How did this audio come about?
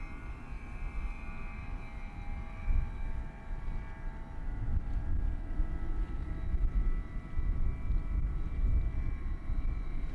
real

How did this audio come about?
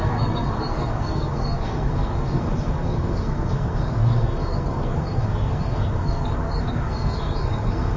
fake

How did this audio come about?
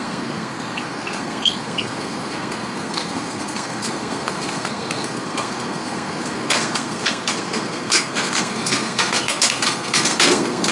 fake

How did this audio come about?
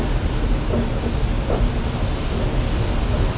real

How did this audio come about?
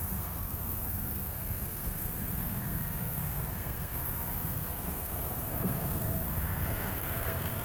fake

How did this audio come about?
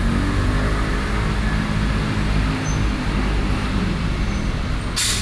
real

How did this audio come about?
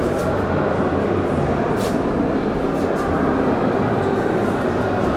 real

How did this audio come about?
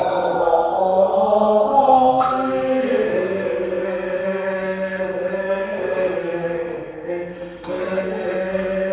fake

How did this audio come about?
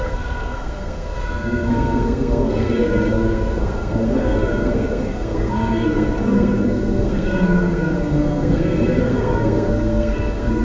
fake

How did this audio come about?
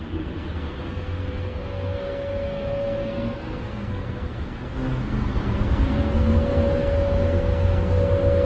fake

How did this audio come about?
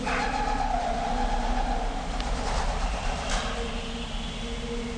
real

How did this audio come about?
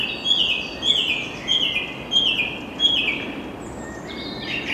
real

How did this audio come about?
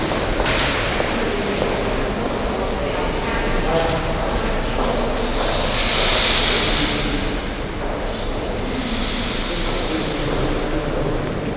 real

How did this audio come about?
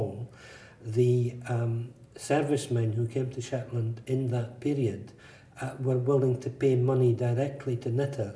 real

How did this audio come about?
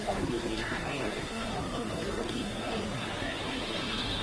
fake